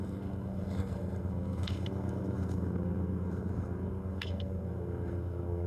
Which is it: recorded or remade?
remade